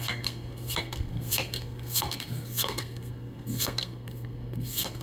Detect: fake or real fake